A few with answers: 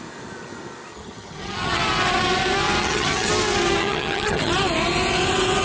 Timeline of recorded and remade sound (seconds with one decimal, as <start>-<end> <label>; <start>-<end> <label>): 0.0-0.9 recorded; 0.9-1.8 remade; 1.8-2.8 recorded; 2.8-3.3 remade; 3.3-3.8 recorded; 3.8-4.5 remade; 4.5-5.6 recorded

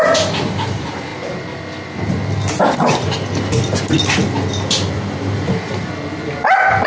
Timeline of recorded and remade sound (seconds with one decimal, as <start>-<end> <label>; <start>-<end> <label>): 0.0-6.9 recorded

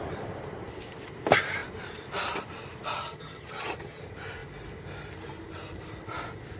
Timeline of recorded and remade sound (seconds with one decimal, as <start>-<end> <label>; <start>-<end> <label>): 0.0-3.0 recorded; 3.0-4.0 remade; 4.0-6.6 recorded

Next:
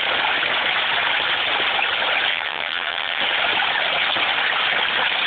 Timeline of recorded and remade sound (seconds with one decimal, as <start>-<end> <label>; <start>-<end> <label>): 0.0-2.3 recorded; 2.3-3.2 remade; 3.2-5.3 recorded

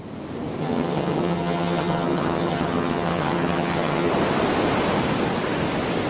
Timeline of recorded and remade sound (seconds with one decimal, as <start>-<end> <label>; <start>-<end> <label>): 0.0-0.6 recorded; 0.6-4.1 remade; 4.1-6.1 recorded